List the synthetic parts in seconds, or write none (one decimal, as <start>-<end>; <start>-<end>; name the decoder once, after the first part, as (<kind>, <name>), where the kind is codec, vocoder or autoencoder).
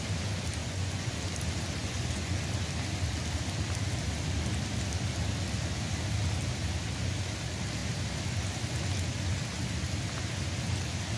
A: 0.6-1.1 (vocoder, Vocos); 1.8-2.4